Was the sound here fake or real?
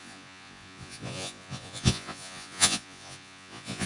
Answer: fake